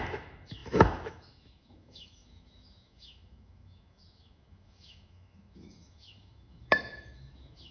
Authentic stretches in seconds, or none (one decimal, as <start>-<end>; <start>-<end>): none